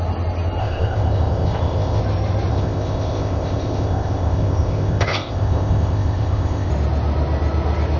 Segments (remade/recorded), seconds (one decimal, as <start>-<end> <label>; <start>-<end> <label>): 0.0-0.6 recorded; 0.6-2.0 remade; 2.0-2.5 recorded; 2.5-6.7 remade; 6.7-8.0 recorded